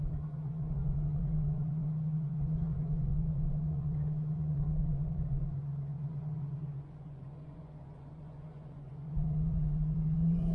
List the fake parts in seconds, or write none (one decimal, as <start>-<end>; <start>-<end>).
0.0-10.5